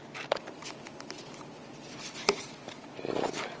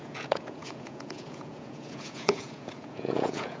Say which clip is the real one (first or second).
first